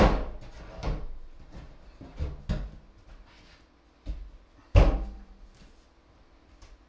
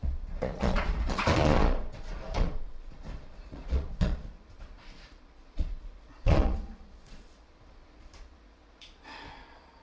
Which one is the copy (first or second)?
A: second